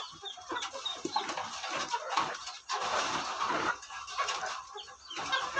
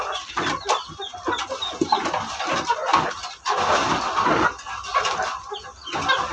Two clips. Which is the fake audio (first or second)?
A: first